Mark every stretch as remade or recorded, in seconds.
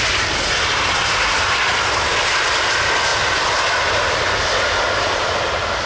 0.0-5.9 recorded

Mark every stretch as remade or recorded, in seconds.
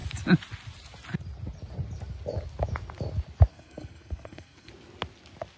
0.0-3.5 recorded; 3.5-4.7 remade; 4.7-5.6 recorded